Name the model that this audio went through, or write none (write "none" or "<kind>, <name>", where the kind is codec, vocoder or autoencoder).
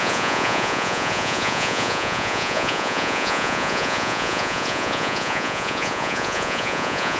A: vocoder, Vocos